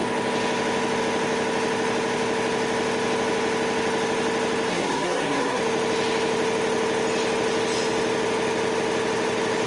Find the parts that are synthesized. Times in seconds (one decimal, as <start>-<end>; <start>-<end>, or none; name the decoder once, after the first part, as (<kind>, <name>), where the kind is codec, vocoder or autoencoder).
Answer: 4.7-5.6 (codec, SNAC)